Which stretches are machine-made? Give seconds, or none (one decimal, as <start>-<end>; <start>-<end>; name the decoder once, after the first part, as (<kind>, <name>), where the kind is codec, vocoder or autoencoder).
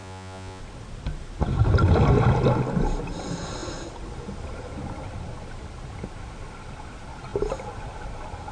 0.0-0.6 (vocoder, Vocos)